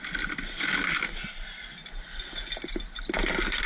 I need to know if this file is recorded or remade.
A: recorded